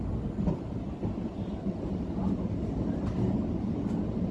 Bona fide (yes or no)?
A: yes